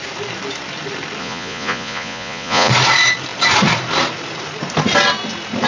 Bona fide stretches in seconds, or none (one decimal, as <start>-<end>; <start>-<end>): 0.0-1.2; 2.7-5.7